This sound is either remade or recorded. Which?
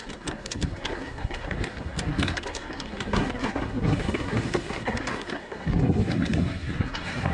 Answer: remade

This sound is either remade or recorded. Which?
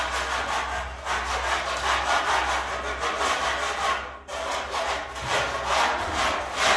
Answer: recorded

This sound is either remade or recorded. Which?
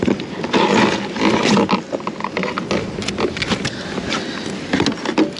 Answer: recorded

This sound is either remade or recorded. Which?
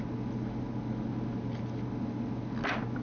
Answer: recorded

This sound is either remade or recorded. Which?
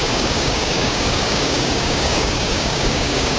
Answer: remade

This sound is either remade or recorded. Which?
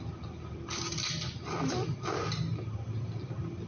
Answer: recorded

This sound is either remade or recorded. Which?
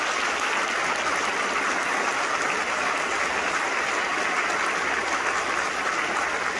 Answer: recorded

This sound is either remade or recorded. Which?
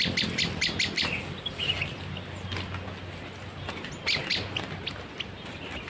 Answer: recorded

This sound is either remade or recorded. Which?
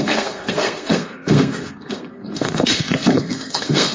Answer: remade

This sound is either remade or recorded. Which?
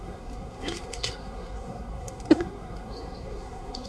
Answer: remade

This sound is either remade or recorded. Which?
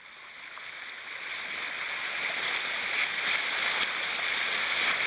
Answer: recorded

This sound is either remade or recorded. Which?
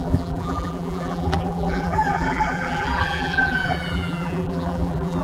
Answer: remade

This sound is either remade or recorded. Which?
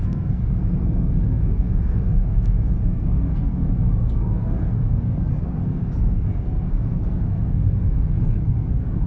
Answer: remade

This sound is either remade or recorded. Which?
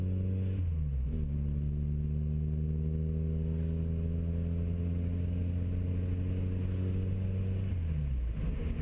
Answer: recorded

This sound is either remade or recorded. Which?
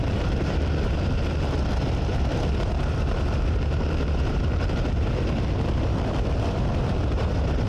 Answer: remade